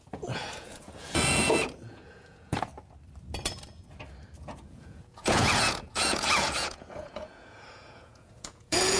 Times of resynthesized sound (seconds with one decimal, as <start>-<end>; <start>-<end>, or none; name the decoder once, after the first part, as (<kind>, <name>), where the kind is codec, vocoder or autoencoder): 0.0-2.7 (vocoder, Vocos); 4.4-9.0